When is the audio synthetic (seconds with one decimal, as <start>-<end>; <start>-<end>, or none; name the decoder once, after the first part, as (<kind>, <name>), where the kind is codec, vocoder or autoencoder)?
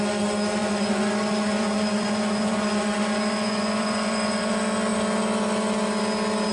0.6-4.5 (vocoder, Vocos)